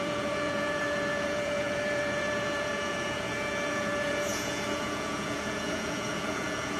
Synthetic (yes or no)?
yes